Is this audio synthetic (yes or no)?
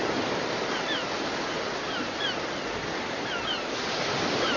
no